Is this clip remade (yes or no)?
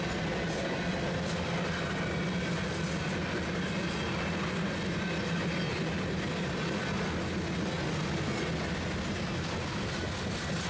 no